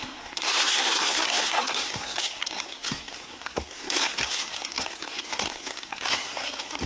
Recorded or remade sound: remade